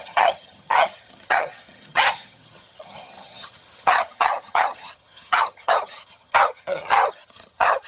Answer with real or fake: fake